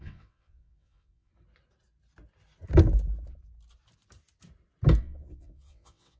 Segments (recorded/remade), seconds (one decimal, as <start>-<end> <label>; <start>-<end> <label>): 0.0-1.3 remade; 1.3-5.0 recorded; 5.0-6.2 remade